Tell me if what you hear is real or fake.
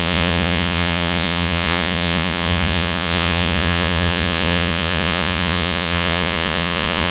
fake